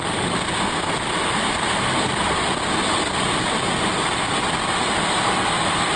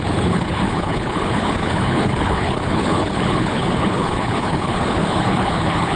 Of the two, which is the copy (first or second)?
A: second